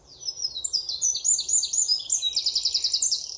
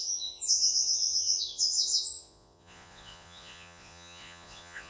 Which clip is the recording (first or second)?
first